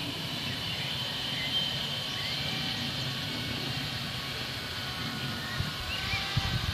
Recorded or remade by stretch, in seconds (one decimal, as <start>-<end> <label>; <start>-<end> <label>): 0.0-4.0 remade; 4.0-6.7 recorded